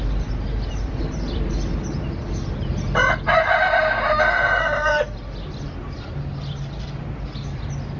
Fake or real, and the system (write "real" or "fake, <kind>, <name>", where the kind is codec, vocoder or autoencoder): real